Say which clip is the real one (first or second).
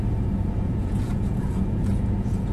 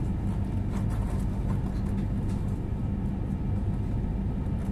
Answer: second